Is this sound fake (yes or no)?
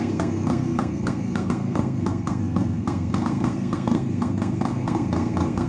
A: yes